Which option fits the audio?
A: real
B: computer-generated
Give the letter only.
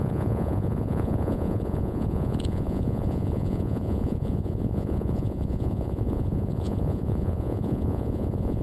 B